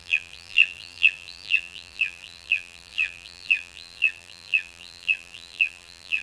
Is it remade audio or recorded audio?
remade